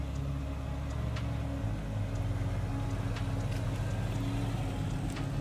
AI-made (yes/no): no